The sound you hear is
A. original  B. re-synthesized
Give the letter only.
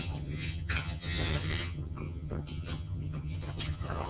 B